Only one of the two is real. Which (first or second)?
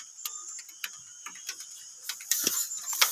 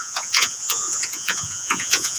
first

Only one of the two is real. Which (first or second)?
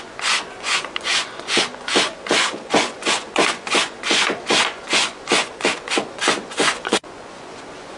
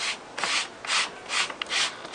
second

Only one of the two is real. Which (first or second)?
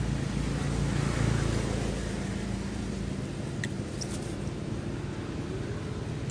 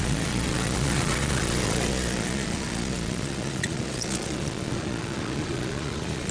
first